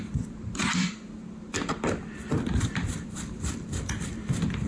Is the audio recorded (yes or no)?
no